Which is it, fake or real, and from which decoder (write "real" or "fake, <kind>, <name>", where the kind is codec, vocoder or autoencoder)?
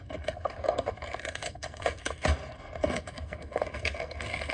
fake, codec, SNAC